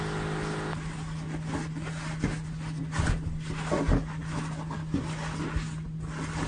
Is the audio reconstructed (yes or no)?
no